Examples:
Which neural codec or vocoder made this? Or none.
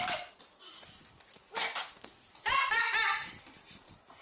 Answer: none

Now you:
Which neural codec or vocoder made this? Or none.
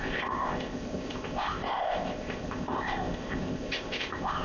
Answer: codec, ZipCodec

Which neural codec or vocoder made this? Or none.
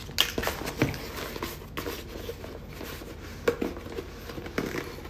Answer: none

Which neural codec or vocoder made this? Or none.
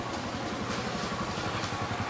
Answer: none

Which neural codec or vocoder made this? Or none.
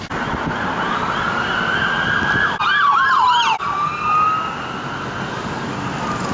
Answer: none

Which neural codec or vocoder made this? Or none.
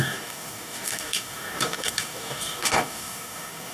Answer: codec, DAC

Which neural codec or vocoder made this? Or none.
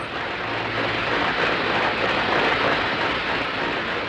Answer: none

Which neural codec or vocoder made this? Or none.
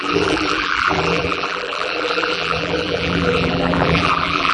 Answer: vocoder, BigVGAN v2